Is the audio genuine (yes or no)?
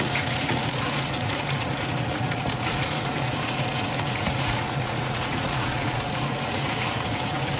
no